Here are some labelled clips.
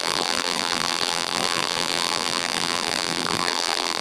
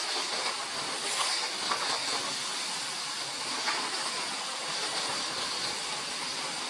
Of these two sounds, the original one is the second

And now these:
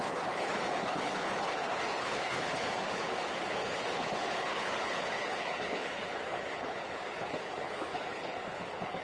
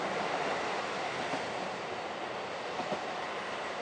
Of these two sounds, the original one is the second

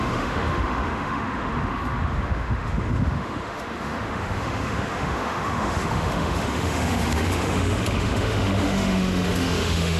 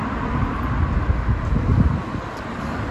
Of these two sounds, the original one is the second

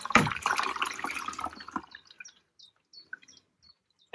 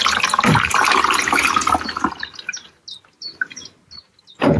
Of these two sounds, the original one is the second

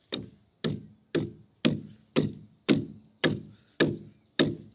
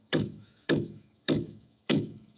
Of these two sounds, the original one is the first